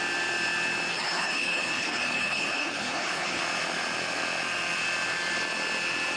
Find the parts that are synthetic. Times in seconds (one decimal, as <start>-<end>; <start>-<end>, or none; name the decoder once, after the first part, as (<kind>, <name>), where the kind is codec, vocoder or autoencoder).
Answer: 0.9-3.4 (codec, HILCodec)